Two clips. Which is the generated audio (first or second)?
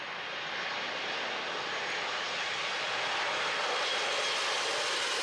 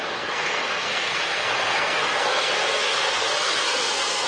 second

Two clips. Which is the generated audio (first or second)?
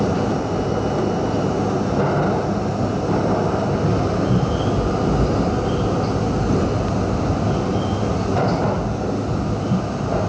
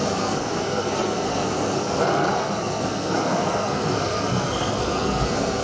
second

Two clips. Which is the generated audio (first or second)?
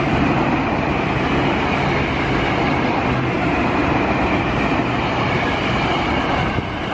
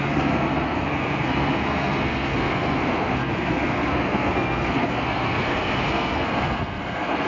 second